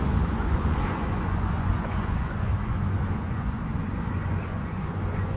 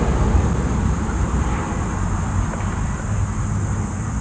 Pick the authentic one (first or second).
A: second